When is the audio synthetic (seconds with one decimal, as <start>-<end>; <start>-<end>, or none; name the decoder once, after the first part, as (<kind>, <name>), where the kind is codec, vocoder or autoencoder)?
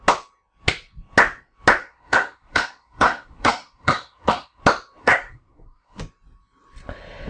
1.8-4.6 (codec, SNAC); 5.0-6.0